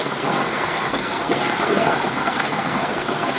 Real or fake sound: fake